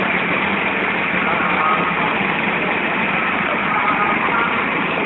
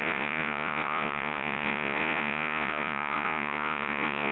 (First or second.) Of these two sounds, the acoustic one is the first